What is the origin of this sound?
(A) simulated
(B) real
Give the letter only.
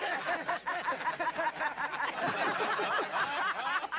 B